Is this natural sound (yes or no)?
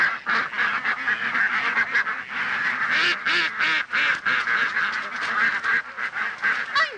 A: yes